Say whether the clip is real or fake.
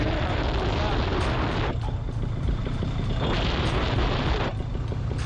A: real